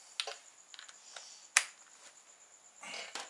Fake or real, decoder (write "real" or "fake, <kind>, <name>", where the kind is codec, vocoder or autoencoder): real